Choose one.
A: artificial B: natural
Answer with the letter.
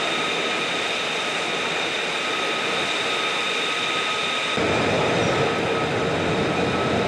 B